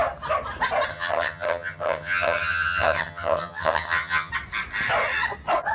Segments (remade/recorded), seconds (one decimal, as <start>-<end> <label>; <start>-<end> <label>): 0.0-0.9 recorded; 0.9-4.3 remade; 4.3-5.7 recorded